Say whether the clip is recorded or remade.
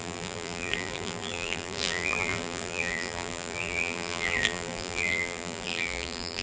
remade